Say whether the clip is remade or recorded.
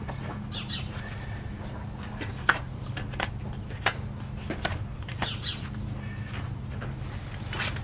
recorded